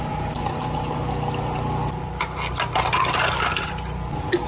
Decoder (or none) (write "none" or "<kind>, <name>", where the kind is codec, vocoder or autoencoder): none